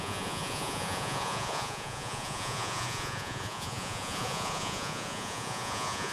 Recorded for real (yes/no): no